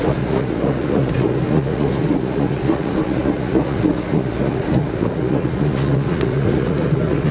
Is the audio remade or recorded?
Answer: remade